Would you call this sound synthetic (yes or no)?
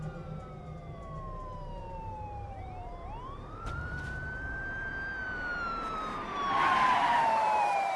yes